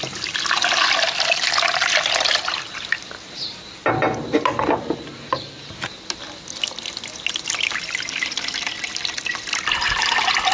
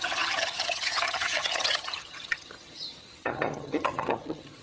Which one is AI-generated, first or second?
second